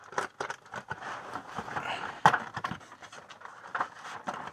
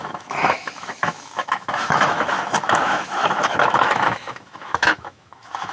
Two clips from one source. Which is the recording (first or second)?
first